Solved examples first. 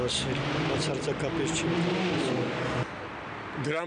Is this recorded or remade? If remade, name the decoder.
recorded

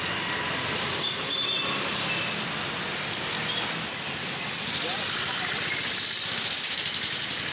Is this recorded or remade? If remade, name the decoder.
recorded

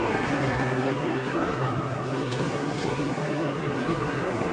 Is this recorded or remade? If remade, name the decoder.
remade, codec, SNAC